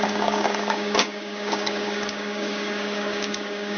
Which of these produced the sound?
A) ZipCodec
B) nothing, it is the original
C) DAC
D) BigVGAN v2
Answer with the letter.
C